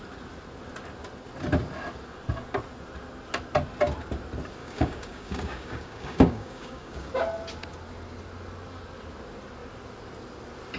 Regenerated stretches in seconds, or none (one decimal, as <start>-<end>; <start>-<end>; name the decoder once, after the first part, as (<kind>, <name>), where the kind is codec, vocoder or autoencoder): 4.6-7.1 (codec, DAC)